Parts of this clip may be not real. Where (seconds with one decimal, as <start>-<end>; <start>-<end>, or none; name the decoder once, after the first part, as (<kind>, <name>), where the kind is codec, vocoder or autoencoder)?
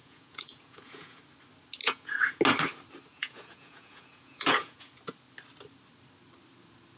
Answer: 0.0-1.2 (vocoder, Vocos); 1.8-2.4; 3.1-4.9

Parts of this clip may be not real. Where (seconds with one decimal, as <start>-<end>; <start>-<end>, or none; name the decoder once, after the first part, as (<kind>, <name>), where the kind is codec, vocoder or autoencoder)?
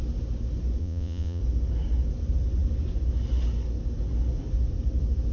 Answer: 0.8-1.4 (vocoder, Vocos)